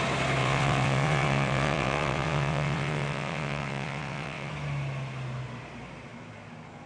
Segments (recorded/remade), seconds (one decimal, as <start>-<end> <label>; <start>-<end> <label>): 0.0-0.4 recorded; 0.4-4.5 remade; 4.5-6.9 recorded

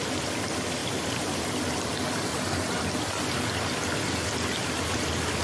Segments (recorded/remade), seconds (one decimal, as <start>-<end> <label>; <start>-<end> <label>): 0.0-5.4 recorded